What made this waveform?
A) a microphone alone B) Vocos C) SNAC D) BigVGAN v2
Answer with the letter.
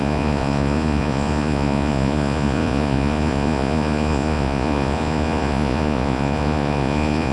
B